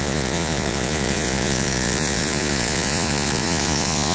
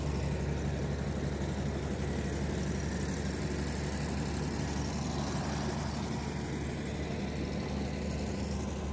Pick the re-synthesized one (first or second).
first